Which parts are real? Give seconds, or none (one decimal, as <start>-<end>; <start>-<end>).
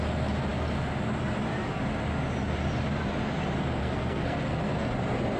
0.0-3.8; 4.9-5.4